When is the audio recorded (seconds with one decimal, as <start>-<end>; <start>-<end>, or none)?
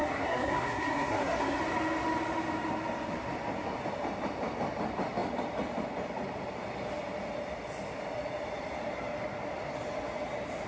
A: 1.6-10.7